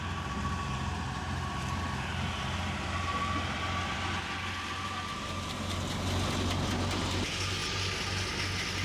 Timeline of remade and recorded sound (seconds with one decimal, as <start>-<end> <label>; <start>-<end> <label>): 0.0-8.8 recorded